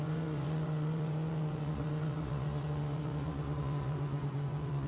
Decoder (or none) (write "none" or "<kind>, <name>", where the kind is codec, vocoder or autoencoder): vocoder, Vocos